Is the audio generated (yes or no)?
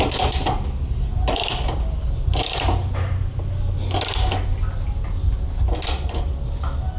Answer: no